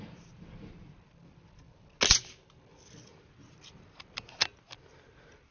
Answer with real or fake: real